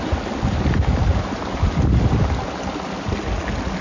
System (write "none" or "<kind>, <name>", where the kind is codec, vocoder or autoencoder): none